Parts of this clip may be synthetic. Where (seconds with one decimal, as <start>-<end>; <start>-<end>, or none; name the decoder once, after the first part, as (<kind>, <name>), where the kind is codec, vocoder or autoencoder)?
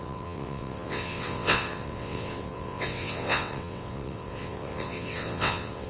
0.0-5.9 (vocoder, WaveNeXt)